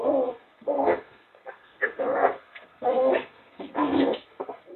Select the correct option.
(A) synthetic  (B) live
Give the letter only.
A